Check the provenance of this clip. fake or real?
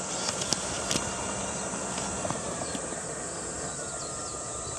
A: fake